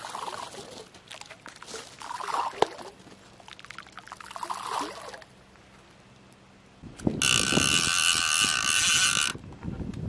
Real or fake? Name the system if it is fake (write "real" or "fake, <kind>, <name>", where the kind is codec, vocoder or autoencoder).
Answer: real